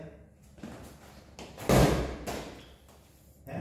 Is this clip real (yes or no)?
yes